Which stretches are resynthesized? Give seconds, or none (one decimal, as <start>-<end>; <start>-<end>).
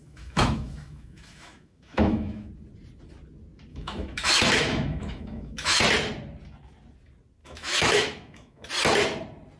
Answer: 0.0-2.5; 3.7-5.8; 7.4-8.7